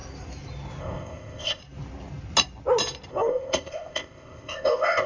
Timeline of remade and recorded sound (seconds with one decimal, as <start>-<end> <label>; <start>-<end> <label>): 0.0-0.8 recorded; 0.8-1.6 remade; 1.6-3.1 recorded; 3.1-5.1 remade